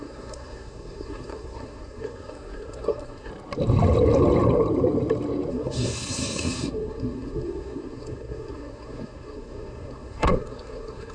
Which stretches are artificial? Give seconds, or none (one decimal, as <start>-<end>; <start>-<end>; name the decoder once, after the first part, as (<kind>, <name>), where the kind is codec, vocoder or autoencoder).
0.0-3.3 (codec, SNAC); 5.5-11.1